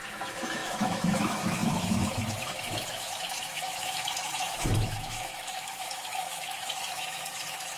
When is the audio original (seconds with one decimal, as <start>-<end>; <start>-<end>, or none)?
none